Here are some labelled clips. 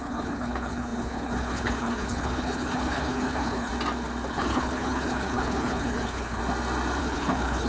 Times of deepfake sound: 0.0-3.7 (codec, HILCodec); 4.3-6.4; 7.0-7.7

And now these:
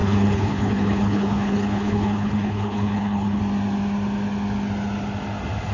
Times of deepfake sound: 0.0-3.4 (codec, HILCodec)